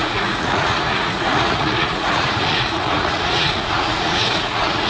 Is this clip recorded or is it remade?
remade